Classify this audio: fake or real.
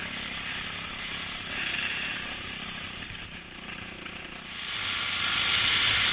fake